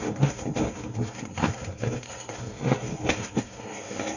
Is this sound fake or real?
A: fake